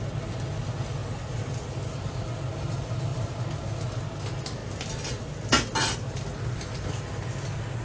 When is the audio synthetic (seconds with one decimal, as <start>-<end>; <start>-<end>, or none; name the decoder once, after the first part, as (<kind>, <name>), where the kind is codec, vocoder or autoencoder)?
none